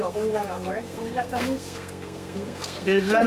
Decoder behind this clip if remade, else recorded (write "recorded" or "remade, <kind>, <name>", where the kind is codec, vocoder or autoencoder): remade, codec, SNAC